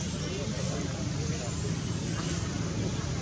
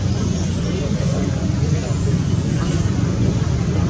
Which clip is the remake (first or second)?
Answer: second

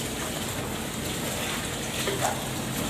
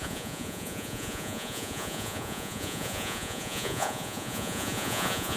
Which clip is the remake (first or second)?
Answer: second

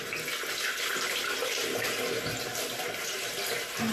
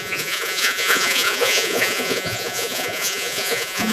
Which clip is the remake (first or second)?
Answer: second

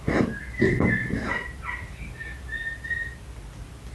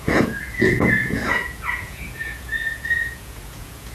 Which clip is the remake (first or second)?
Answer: second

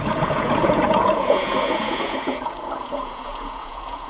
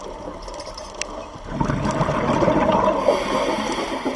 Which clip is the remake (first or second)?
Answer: first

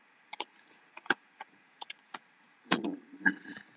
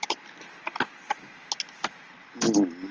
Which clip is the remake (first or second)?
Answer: first